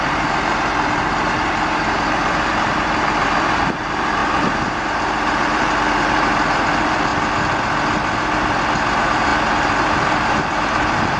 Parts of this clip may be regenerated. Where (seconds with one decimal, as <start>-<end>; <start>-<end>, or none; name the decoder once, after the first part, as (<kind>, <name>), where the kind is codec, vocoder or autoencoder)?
0.0-7.1 (vocoder, BigVGAN v2); 8.9-9.3; 9.8-11.2